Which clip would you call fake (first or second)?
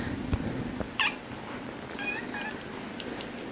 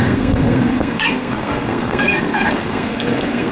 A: second